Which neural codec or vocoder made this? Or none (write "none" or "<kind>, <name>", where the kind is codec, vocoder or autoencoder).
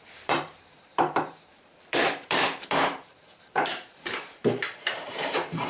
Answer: vocoder, BigVGAN v2